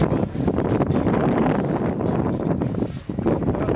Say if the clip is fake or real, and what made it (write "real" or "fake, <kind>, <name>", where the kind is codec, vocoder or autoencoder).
real